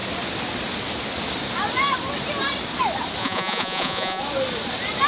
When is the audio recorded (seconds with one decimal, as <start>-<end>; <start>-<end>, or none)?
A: 0.0-3.2; 4.2-5.1